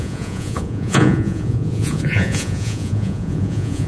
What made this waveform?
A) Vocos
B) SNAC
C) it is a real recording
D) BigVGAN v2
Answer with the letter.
A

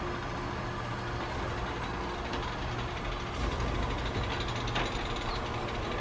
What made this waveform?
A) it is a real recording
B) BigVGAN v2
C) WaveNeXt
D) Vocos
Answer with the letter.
A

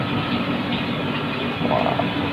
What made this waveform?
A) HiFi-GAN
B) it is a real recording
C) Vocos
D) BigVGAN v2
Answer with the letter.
B